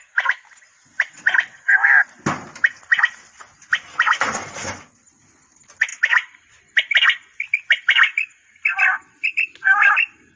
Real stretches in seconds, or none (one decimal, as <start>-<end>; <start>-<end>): 0.0-10.4